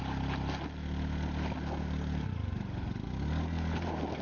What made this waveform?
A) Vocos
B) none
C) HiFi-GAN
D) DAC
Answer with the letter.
B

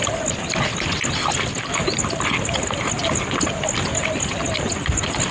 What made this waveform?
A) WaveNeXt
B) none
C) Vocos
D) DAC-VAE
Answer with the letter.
B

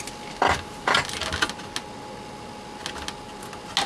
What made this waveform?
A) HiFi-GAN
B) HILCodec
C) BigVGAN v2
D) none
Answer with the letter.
D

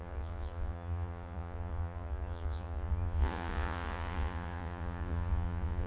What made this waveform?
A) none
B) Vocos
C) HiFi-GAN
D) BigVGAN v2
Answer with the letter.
B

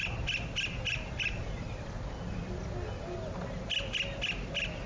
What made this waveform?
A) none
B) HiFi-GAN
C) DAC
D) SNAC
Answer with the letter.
A